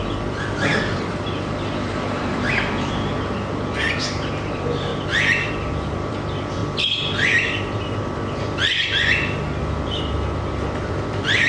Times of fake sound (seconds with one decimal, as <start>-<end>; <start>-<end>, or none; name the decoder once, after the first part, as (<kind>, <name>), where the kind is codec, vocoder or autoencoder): 0.0-4.9 (vocoder, BigVGAN v2); 5.5-6.6; 9.6-11.5